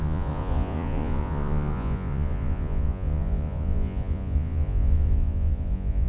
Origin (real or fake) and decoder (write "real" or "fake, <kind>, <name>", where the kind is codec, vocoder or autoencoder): fake, vocoder, Vocos